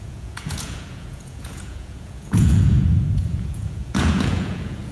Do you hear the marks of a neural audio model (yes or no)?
yes